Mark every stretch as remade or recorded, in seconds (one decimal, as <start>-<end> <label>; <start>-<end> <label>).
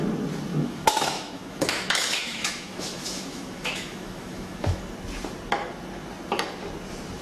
0.0-0.5 recorded; 0.5-4.8 remade; 4.8-7.2 recorded